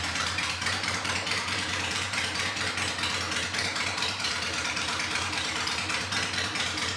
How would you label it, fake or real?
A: fake